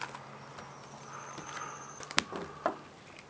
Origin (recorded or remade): recorded